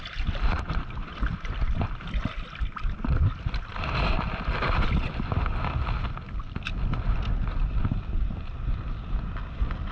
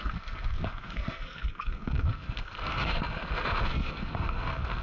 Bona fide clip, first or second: first